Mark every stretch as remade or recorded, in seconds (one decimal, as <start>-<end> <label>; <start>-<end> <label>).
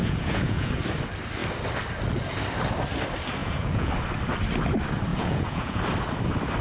0.0-0.7 remade; 0.7-3.4 recorded; 3.4-3.9 remade; 3.9-5.1 recorded; 5.1-5.8 remade; 5.8-6.6 recorded